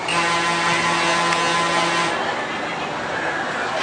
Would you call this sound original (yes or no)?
yes